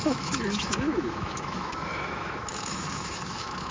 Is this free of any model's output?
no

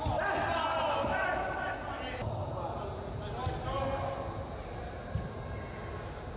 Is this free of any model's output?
yes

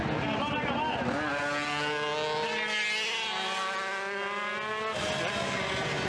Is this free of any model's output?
yes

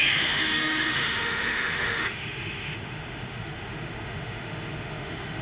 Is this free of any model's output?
no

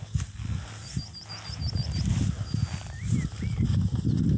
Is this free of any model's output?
yes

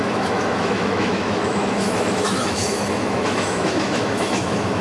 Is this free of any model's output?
no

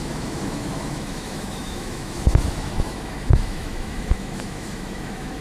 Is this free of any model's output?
no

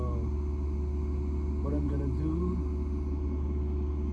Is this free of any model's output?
yes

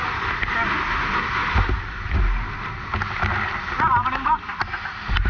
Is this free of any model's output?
yes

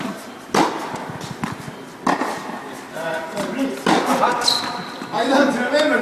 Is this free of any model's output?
yes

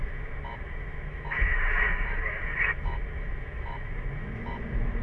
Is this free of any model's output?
no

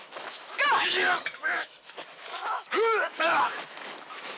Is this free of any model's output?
no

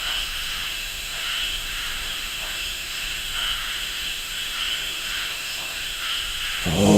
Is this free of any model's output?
no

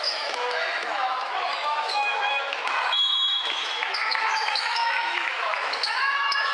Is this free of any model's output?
no